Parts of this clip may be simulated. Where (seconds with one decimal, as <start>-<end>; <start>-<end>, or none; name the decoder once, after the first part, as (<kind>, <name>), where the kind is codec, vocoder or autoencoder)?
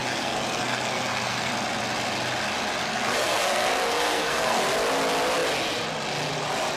0.0-1.5 (codec, SNAC); 2.8-4.6